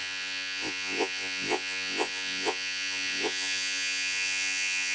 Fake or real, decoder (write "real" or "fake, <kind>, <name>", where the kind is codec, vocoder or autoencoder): fake, vocoder, Vocos